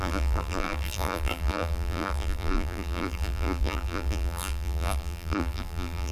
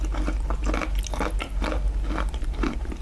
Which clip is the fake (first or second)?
first